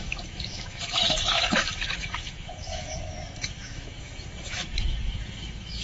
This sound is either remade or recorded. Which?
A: remade